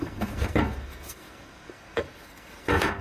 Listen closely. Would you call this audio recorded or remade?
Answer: remade